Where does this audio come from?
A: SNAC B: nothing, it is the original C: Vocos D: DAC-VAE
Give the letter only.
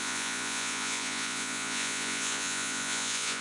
C